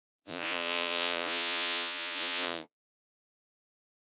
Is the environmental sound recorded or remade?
remade